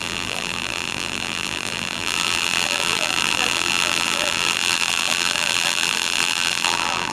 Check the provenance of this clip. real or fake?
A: fake